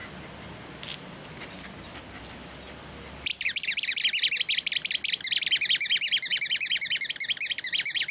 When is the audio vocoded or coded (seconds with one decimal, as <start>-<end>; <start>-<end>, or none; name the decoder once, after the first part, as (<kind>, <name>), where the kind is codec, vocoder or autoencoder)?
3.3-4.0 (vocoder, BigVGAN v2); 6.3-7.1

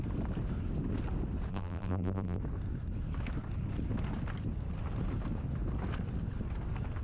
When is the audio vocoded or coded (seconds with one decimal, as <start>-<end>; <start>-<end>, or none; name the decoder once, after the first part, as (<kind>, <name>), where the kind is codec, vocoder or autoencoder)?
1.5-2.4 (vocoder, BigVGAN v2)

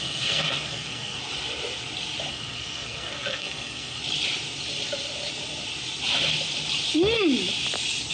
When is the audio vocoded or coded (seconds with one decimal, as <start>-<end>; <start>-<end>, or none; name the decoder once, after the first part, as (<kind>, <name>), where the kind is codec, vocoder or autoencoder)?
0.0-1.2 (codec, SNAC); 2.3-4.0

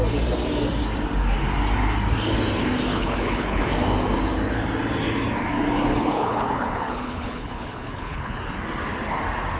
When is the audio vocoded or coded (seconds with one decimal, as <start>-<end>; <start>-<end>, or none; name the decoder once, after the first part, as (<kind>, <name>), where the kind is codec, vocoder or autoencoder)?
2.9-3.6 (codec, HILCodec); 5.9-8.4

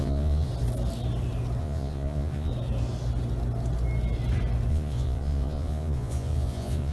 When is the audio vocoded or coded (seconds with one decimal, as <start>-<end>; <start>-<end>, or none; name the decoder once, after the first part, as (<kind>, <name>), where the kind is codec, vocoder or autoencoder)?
0.0-0.5 (vocoder, Vocos); 1.6-2.5; 4.7-6.9